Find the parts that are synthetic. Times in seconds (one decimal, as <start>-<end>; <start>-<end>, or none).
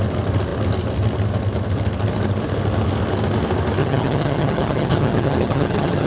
3.8-6.1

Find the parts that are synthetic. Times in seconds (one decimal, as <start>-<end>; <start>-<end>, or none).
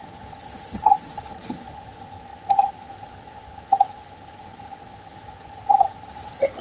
0.0-6.6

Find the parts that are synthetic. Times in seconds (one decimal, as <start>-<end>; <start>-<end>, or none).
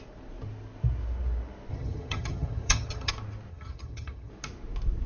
1.7-3.1; 3.5-4.3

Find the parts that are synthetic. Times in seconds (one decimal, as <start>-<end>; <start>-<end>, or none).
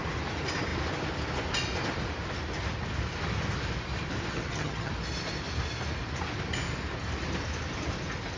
4.3-4.9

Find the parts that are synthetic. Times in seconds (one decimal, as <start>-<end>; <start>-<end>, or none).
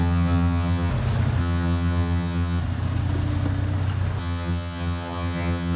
0.0-0.9; 1.4-2.6; 4.2-5.8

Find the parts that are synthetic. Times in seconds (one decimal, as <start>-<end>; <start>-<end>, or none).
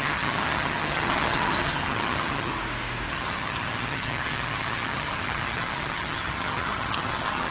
0.0-2.5; 3.1-7.5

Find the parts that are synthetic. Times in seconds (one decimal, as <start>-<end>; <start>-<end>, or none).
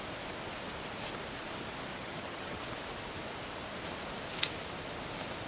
1.9-2.6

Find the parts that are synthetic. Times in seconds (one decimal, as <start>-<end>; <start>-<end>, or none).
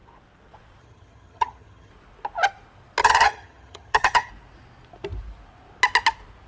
0.8-1.9; 3.0-4.3